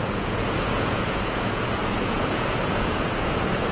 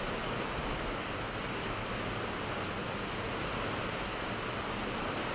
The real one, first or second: second